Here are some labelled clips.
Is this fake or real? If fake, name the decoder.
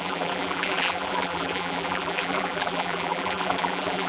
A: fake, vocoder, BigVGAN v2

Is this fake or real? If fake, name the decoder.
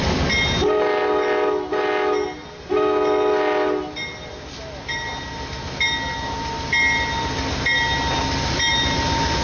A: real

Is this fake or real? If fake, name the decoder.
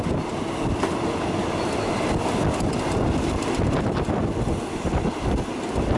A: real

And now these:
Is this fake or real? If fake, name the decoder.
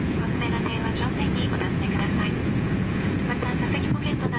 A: fake, vocoder, Vocos